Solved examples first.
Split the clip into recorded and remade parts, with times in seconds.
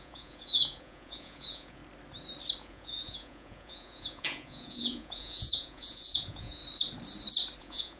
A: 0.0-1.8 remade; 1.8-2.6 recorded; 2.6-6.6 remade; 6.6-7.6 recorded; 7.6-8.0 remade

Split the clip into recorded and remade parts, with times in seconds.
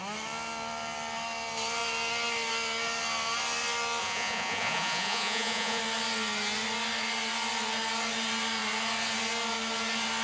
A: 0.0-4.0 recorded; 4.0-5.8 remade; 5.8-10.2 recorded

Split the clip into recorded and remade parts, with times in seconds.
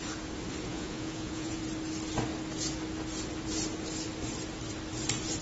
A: 0.0-0.7 recorded; 0.7-1.6 remade; 1.6-5.4 recorded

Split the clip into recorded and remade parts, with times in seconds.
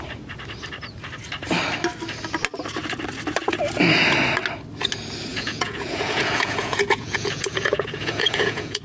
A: 0.0-5.3 recorded; 5.3-8.8 remade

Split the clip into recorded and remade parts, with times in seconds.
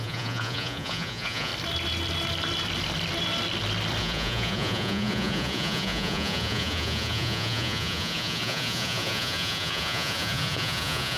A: 0.0-1.5 remade; 1.5-4.0 recorded; 4.0-11.2 remade